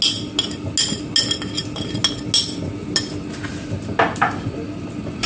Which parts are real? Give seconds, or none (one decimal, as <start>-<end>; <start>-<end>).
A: 0.0-5.3